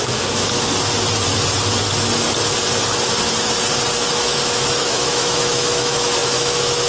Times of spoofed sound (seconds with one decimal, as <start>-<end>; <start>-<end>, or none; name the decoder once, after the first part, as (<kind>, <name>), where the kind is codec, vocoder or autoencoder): 0.0-0.7 (autoencoder, DAC-VAE); 4.1-6.9